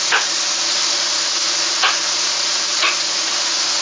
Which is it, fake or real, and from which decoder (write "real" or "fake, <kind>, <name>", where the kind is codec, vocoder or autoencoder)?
fake, vocoder, Vocos